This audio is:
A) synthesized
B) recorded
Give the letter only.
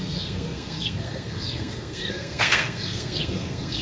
A